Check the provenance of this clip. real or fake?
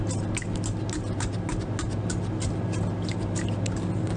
real